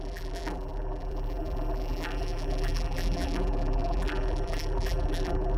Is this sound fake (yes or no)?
yes